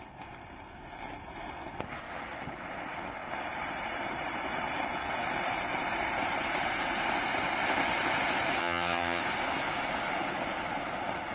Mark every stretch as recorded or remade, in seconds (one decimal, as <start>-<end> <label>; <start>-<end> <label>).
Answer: 0.0-8.6 recorded; 8.6-9.2 remade; 9.2-11.3 recorded